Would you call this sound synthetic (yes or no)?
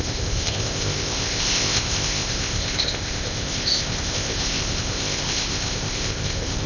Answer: yes